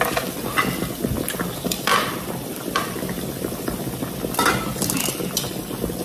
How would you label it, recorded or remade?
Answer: remade